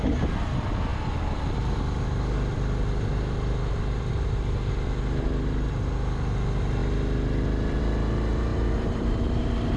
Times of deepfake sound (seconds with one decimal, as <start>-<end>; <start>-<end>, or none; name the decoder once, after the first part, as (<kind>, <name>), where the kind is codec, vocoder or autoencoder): 8.5-9.8 (vocoder, BigVGAN v2)